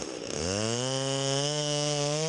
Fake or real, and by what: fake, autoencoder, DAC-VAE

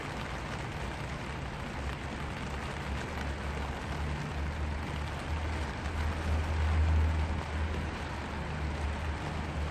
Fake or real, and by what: real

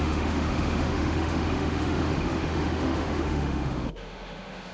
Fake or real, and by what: fake, autoencoder, DAC-VAE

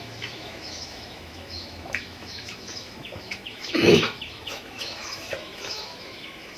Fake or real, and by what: fake, autoencoder, DAC-VAE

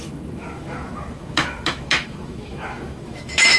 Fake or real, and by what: fake, autoencoder, DAC-VAE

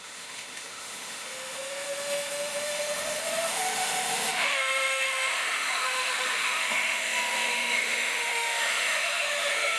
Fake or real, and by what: fake, autoencoder, DAC-VAE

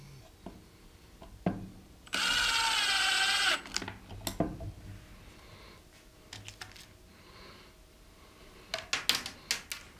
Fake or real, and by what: real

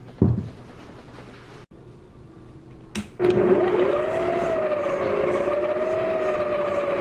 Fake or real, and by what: real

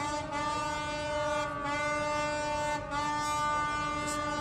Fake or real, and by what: real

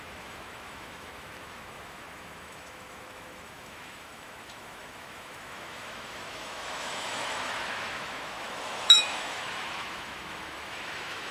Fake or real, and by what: fake, autoencoder, DAC-VAE